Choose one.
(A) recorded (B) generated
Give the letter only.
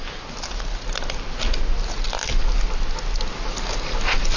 A